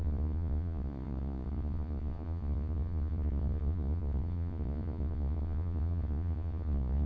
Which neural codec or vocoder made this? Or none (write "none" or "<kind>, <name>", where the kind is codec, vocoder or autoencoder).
vocoder, Vocos